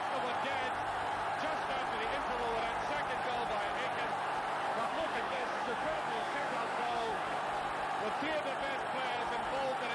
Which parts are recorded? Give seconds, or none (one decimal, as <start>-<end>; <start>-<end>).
0.0-4.7; 7.4-9.9